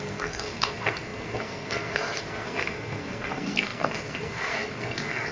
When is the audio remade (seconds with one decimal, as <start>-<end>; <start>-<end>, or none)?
0.0-5.3